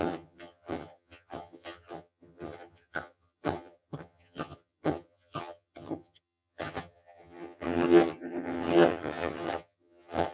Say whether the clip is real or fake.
fake